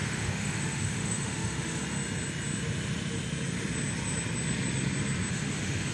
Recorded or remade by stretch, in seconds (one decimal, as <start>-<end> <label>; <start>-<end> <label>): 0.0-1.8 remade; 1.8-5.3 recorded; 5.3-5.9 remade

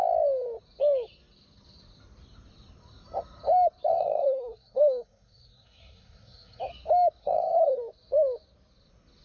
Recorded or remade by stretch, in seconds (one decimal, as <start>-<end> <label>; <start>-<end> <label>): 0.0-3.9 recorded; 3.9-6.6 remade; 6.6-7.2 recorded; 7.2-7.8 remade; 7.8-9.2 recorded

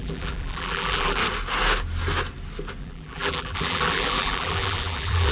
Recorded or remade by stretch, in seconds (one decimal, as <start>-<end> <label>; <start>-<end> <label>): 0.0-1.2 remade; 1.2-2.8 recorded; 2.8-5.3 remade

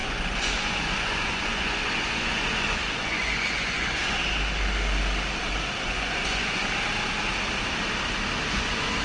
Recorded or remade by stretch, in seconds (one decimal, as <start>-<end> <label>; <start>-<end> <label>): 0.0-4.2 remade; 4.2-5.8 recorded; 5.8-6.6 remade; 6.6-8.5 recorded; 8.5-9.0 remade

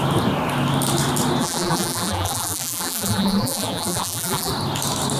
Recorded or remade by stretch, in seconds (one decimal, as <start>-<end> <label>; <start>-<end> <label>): 0.0-1.4 recorded; 1.4-4.5 remade; 4.5-5.2 recorded

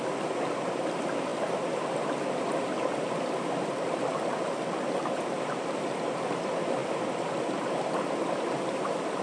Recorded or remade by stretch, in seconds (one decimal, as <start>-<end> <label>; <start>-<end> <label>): 0.0-9.2 recorded